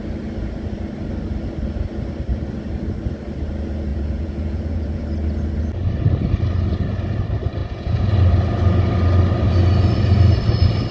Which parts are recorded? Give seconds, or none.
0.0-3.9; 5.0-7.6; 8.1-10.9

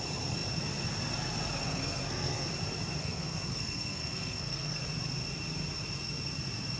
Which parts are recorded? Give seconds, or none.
0.0-1.8; 2.5-3.0; 4.8-6.8